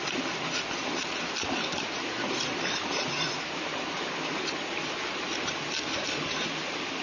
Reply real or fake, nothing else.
real